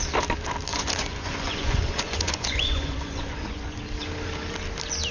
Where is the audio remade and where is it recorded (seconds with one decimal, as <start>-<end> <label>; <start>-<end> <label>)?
0.0-0.7 recorded; 0.7-3.8 remade; 3.8-5.1 recorded